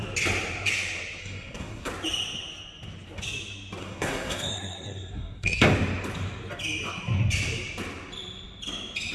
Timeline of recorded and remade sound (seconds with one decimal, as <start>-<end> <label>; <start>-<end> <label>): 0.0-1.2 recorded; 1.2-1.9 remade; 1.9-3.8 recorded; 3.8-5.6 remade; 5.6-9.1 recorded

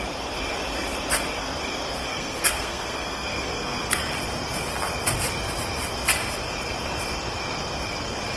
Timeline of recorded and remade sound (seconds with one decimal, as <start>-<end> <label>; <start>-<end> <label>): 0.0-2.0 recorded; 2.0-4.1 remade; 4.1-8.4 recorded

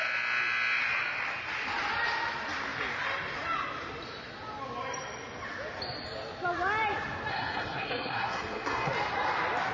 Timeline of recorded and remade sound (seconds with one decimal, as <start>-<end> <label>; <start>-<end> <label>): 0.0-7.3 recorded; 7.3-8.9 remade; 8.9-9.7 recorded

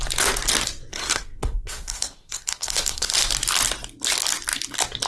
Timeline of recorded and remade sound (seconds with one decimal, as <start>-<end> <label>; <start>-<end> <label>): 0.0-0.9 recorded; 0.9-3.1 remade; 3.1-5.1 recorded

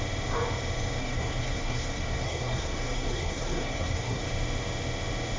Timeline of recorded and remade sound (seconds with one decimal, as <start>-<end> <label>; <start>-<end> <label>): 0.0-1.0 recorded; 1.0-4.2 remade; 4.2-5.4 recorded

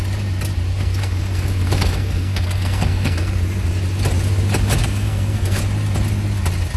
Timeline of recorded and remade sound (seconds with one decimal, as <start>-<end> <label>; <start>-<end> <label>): 0.0-0.7 recorded; 0.7-3.4 remade; 3.4-4.8 recorded; 4.8-5.6 remade; 5.6-6.8 recorded